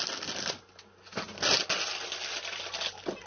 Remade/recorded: recorded